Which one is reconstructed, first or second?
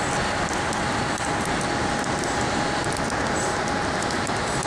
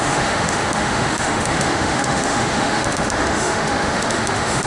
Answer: second